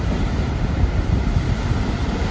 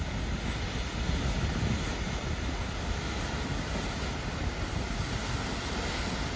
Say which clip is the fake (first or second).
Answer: first